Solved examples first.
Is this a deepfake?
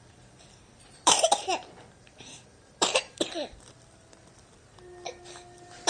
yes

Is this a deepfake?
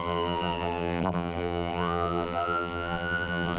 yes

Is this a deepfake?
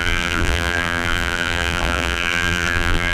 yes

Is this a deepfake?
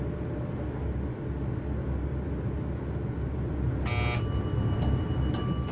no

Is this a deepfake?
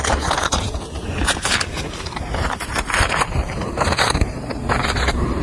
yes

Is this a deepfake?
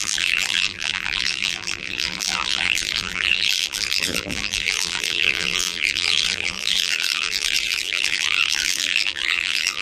yes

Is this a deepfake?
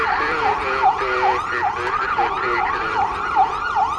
yes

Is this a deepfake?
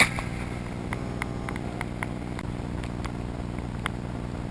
no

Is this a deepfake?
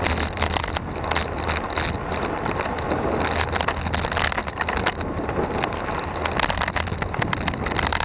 no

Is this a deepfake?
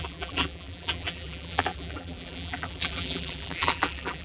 yes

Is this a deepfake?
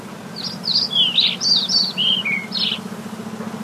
no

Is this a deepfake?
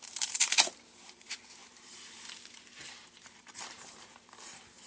yes